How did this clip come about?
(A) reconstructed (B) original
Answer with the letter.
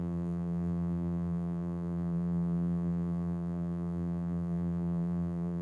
A